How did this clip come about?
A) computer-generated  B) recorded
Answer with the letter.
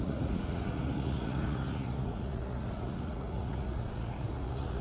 A